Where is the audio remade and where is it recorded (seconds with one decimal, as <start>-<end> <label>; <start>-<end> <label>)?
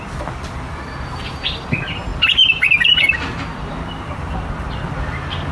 0.0-5.5 recorded